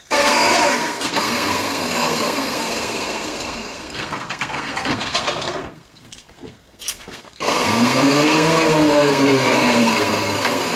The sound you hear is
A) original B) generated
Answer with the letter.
B